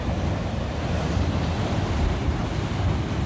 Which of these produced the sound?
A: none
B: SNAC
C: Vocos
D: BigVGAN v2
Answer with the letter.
D